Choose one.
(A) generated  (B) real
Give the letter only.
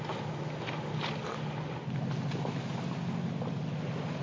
B